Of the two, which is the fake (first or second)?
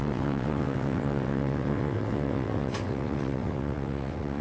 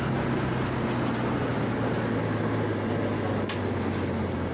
first